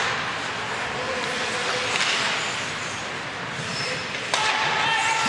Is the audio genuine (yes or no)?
yes